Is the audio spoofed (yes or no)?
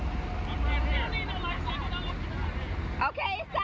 no